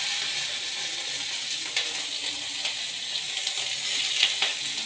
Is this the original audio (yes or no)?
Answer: yes